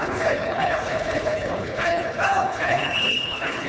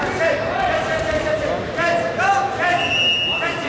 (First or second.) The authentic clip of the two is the second